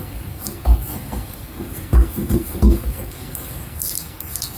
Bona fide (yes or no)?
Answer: no